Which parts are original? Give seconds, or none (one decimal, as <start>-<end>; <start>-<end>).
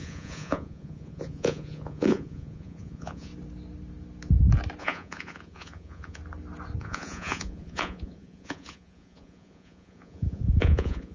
3.3-4.8; 6.2-6.8